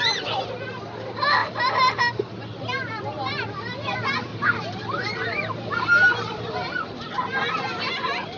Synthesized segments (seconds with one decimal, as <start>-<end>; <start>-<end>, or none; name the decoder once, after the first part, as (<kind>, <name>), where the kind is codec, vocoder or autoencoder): 1.4-2.3 (vocoder, BigVGAN v2); 4.3-7.1